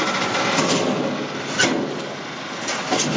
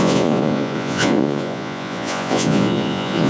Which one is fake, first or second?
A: second